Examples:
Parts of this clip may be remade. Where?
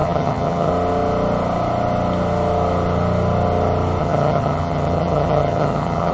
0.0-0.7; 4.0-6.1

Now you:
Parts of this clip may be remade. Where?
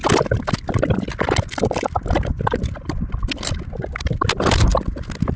none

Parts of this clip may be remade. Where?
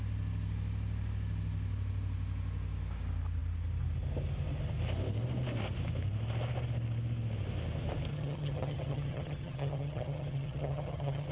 8.1-11.3